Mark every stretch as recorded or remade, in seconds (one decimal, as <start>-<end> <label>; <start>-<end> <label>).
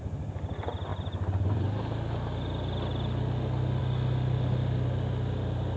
0.0-5.8 recorded